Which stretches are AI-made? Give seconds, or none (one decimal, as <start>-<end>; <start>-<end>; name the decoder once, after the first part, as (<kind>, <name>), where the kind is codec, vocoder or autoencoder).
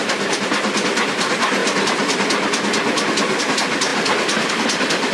none